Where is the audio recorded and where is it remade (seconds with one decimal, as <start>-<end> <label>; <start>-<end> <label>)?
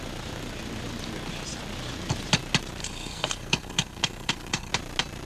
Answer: 0.0-2.8 recorded; 2.8-4.7 remade; 4.7-5.2 recorded